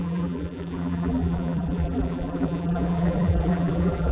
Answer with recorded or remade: remade